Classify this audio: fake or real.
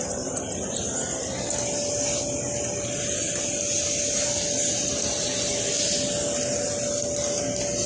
real